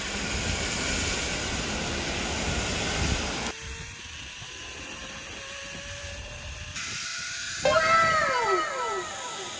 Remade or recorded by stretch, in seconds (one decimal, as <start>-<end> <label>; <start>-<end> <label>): 0.0-9.6 recorded